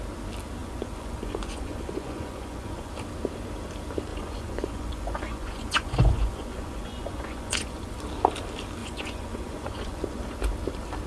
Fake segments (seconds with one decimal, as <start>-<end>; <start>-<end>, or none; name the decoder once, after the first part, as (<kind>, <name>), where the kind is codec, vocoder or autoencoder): 0.6-2.9 (vocoder, Vocos); 4.1-7.9; 8.8-10.2